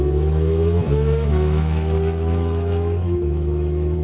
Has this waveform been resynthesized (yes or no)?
yes